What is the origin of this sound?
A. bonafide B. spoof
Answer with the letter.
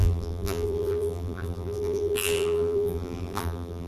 B